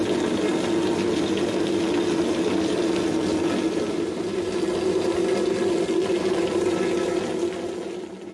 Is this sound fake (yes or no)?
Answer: no